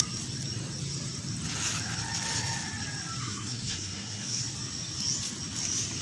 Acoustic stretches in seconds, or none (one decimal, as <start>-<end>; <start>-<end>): 0.0-3.2; 4.4-6.0